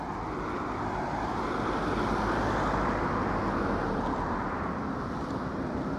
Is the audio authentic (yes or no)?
yes